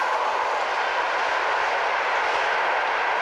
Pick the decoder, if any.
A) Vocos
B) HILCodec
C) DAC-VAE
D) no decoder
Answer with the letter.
D